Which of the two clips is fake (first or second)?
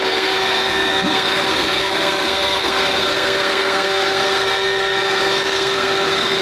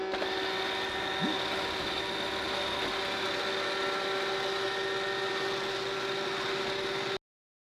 first